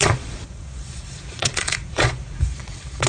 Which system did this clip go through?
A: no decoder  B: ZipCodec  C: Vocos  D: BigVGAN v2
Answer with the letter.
C